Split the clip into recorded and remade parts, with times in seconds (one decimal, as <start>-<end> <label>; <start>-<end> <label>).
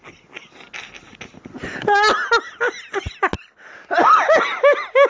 0.0-5.1 recorded